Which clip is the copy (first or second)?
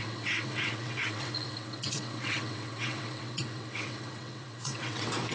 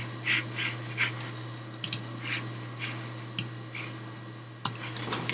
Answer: first